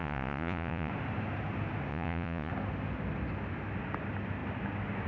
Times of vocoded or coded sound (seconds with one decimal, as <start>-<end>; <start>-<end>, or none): 0.0-0.9; 1.9-2.5